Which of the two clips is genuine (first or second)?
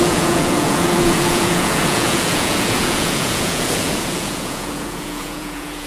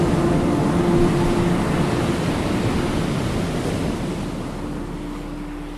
second